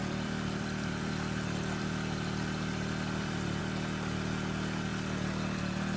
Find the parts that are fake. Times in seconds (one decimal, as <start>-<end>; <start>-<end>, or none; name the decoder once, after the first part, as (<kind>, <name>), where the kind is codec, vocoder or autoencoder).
0.0-3.6 (vocoder, BigVGAN v2)